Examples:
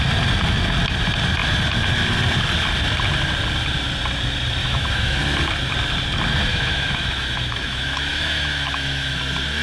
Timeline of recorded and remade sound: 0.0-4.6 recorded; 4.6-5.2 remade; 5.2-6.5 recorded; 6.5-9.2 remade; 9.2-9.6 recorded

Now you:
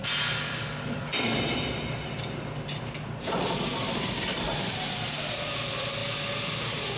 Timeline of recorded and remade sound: 0.0-7.0 recorded

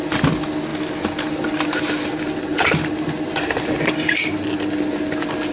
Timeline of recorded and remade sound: 0.0-5.5 recorded

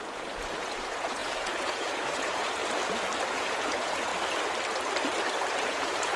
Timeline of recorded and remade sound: 0.0-2.6 remade; 2.6-3.3 recorded; 3.3-4.1 remade; 4.1-5.6 recorded; 5.6-6.2 remade

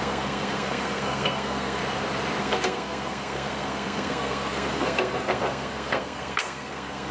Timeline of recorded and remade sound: 0.0-1.8 remade; 1.8-2.4 recorded; 2.4-7.1 remade

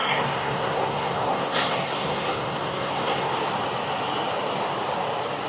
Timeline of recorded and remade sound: 0.0-3.3 remade; 3.3-5.5 recorded

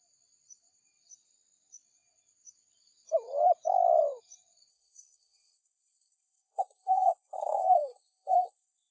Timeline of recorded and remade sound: 0.0-4.7 recorded; 4.7-8.9 remade